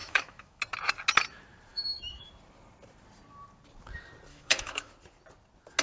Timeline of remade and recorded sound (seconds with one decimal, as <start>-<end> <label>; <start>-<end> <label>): 0.0-0.6 remade; 0.6-1.7 recorded; 1.7-2.3 remade; 2.3-4.3 recorded; 4.3-4.9 remade; 4.9-5.8 recorded